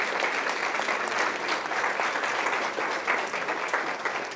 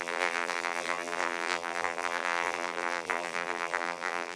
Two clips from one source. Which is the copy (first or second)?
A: second